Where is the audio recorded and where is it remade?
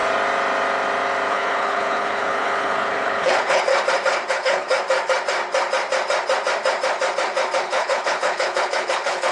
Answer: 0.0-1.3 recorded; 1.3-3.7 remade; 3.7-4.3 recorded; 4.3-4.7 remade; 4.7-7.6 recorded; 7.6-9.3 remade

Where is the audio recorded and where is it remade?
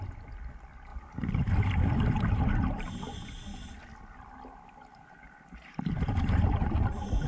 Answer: 0.0-4.9 recorded; 4.9-6.4 remade; 6.4-7.3 recorded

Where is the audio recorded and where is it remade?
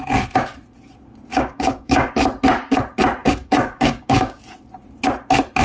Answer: 0.0-1.3 recorded; 1.3-2.1 remade; 2.1-3.2 recorded; 3.2-4.4 remade; 4.4-5.6 recorded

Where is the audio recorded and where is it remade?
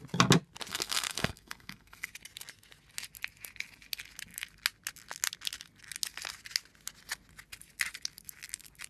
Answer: 0.0-0.7 recorded; 0.7-2.1 remade; 2.1-8.9 recorded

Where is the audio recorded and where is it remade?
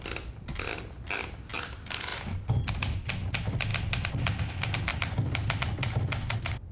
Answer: 0.0-6.7 recorded